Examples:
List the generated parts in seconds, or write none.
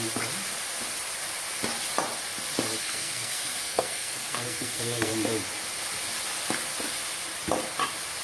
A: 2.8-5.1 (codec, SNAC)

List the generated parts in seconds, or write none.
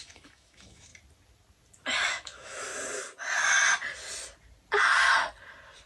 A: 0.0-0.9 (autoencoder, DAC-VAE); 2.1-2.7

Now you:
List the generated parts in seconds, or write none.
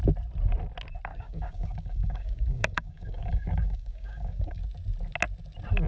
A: 1.1-4.6 (codec, DAC)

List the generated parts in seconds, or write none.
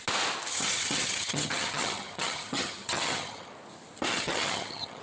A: 0.5-3.5 (vocoder, HiFi-GAN); 4.1-5.0